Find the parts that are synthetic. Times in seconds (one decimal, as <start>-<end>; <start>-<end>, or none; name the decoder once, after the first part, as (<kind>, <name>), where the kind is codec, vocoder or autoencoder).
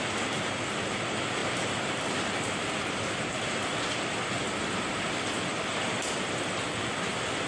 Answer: 1.4-5.2 (vocoder, BigVGAN v2)